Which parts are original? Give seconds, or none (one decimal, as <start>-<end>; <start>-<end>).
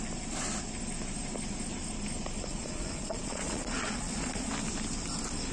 0.0-2.5; 4.5-5.5